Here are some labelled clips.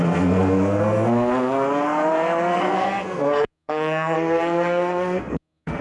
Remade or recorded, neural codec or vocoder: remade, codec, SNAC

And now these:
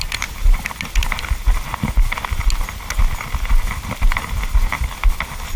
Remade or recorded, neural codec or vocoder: recorded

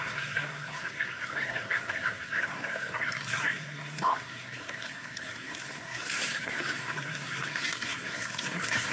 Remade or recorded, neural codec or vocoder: remade, codec, SNAC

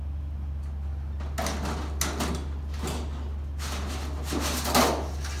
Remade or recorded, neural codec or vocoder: recorded